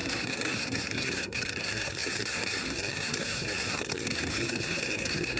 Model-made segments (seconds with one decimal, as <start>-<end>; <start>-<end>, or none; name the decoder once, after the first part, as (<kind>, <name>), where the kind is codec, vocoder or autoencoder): 0.0-5.4 (codec, SNAC)